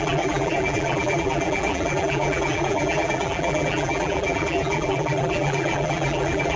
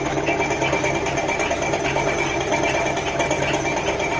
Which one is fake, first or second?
first